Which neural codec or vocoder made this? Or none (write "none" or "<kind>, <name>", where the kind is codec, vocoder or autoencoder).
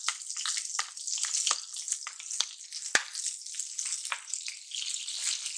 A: none